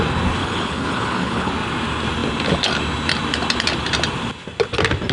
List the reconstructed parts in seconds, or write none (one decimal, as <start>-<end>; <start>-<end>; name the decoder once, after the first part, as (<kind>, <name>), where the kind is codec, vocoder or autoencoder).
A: 0.4-1.5 (codec, HILCodec)